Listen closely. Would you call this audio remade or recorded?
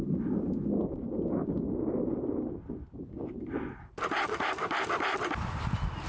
remade